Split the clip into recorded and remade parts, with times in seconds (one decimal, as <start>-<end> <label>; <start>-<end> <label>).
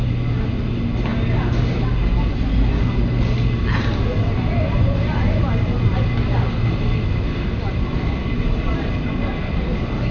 0.0-10.1 recorded